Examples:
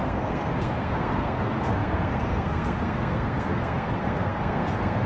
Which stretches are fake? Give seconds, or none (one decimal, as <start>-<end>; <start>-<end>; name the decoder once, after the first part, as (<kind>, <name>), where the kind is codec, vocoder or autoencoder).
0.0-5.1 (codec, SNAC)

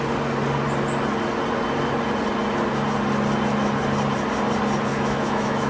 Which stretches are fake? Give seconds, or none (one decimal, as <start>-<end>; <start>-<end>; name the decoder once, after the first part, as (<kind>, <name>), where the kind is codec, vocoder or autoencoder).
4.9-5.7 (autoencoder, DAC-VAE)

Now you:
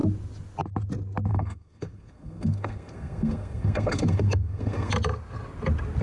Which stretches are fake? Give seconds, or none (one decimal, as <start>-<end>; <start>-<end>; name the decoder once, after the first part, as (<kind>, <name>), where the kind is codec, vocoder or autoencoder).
1.3-4.9 (codec, SNAC)

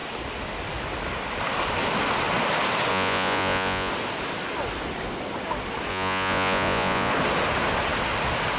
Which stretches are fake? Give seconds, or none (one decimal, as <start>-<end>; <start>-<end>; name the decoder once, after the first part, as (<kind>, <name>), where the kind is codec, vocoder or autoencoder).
2.9-3.9 (vocoder, Vocos); 5.9-7.1

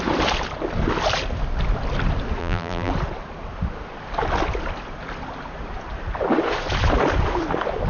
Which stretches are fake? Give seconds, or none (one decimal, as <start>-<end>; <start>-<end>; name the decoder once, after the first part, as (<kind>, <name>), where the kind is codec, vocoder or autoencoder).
2.4-2.9 (vocoder, BigVGAN v2)

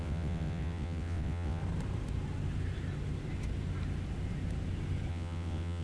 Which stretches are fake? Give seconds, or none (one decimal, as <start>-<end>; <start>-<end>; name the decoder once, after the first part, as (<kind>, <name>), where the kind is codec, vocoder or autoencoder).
0.0-1.6 (vocoder, WaveNeXt); 5.1-5.8

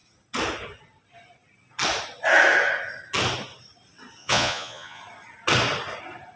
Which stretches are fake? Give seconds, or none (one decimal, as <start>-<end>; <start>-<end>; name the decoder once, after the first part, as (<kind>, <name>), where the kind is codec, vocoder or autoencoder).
4.2-5.0 (vocoder, Vocos)